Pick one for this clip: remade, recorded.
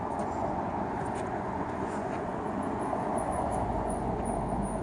remade